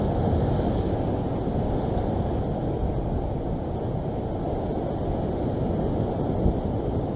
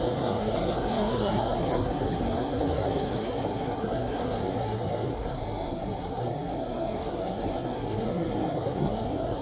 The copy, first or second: second